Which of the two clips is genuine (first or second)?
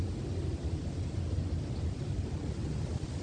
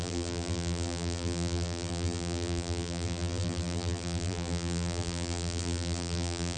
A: first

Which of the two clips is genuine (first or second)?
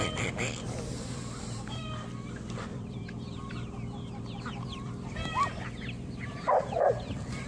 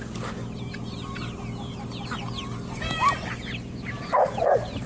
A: second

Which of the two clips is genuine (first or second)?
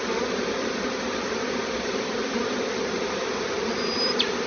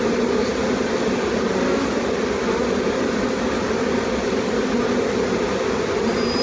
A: second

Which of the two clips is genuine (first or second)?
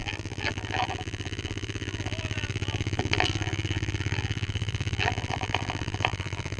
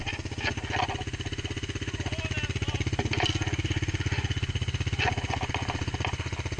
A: second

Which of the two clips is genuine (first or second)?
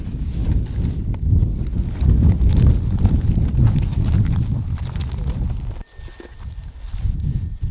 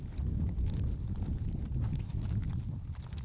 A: first